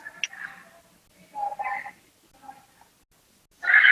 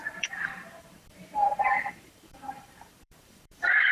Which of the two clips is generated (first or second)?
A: second